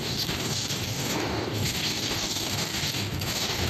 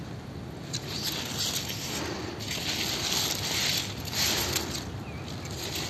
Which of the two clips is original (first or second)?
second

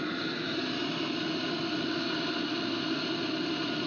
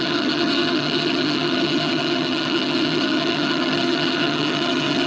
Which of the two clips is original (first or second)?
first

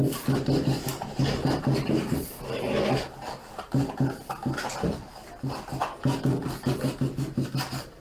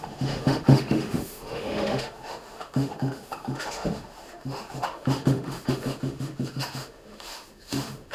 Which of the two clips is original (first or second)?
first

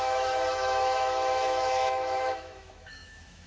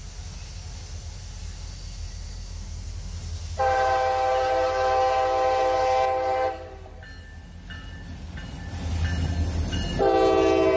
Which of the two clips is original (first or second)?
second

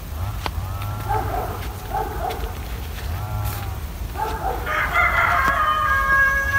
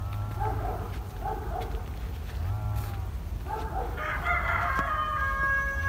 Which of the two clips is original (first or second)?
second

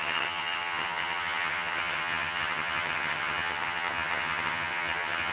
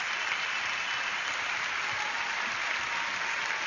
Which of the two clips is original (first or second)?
second